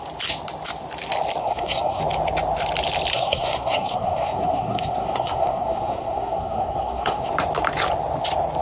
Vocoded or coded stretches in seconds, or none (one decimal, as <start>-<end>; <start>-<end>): 1.4-2.0; 3.1-7.3